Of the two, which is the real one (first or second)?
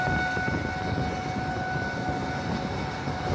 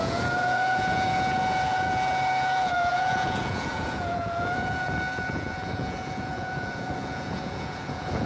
first